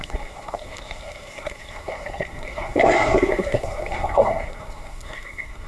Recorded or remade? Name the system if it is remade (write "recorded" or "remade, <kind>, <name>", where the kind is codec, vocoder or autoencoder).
remade, codec, SNAC